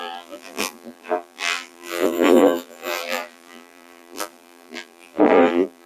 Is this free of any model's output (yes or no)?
no